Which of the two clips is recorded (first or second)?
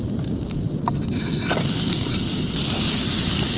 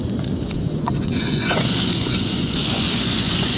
first